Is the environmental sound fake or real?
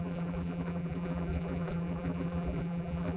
fake